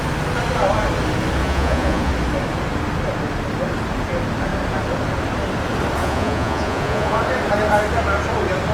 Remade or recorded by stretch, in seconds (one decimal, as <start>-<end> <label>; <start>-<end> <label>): 0.0-1.4 recorded; 1.4-2.1 remade; 2.1-6.0 recorded; 6.0-7.2 remade; 7.2-8.7 recorded